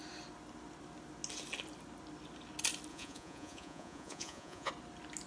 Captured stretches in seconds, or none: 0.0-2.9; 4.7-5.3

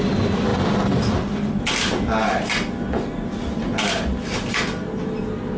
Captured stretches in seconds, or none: 0.0-5.6

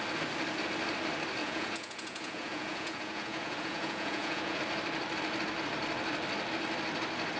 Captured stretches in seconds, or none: 0.0-1.4; 4.6-7.4